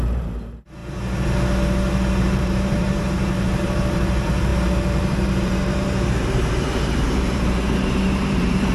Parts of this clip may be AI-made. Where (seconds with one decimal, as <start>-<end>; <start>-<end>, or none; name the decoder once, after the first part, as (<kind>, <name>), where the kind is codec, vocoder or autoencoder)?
0.0-0.8 (vocoder, BigVGAN v2); 2.4-8.7